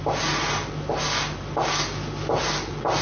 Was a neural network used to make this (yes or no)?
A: no